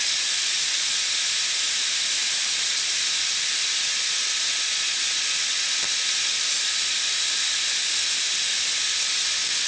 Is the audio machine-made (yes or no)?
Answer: no